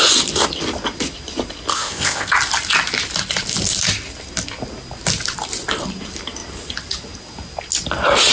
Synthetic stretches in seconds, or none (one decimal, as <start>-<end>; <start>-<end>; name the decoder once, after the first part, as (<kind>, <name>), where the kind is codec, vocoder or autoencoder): 1.7-2.3 (codec, ZipCodec)